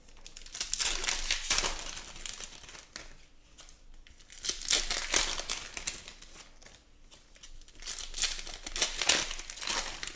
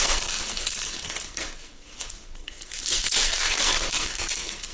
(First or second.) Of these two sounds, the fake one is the second